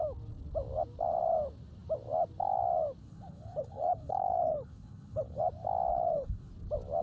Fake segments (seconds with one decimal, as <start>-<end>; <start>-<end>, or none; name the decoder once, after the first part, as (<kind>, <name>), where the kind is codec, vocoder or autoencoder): 3.0-5.4 (codec, HILCodec); 5.9-6.5